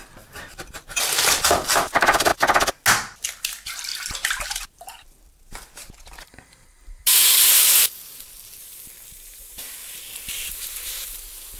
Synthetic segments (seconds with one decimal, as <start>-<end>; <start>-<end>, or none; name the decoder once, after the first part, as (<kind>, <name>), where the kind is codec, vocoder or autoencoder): 0.0-2.3 (vocoder, BigVGAN v2); 3.3-11.6